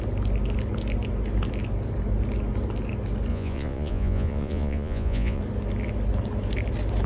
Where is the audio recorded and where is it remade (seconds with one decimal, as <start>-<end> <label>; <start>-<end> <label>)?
0.0-3.3 recorded; 3.3-5.4 remade; 5.4-7.1 recorded